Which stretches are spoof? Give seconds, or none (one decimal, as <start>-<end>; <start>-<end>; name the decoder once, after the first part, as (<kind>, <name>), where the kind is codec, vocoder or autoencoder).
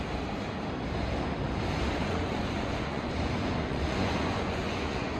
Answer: 2.0-5.2 (vocoder, Vocos)